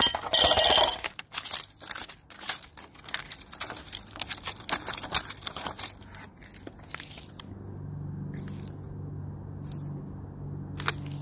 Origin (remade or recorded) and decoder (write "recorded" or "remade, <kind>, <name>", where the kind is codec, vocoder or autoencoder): recorded